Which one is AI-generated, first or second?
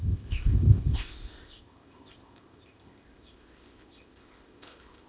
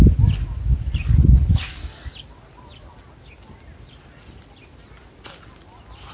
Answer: first